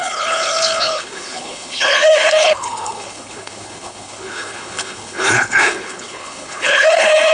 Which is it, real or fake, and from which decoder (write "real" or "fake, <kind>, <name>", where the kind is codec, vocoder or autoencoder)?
fake, codec, HILCodec